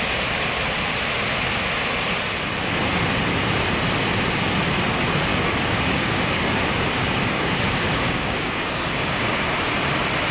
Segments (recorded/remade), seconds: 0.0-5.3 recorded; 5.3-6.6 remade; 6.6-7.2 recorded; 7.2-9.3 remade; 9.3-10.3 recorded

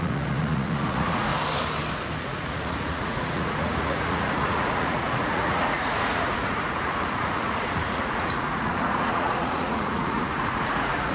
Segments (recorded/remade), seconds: 0.0-1.3 remade; 1.3-2.2 recorded; 2.2-11.1 remade